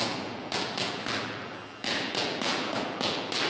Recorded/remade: remade